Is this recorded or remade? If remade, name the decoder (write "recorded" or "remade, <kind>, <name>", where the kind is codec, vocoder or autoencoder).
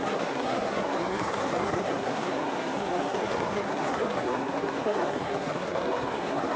remade, codec, SNAC